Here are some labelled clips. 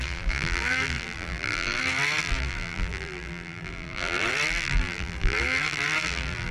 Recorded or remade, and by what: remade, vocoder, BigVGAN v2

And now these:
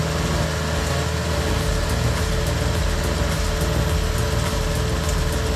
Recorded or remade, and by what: recorded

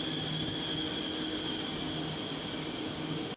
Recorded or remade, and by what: recorded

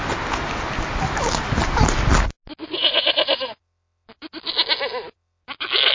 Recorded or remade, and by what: recorded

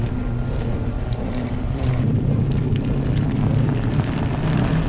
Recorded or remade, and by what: remade, vocoder, BigVGAN v2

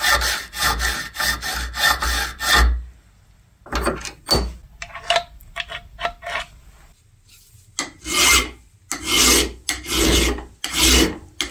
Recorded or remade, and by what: recorded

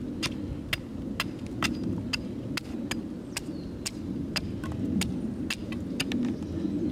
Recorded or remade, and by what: recorded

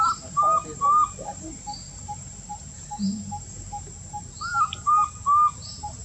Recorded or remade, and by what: remade, vocoder, BigVGAN v2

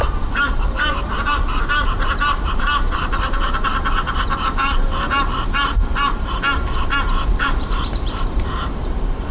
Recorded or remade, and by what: remade, vocoder, BigVGAN v2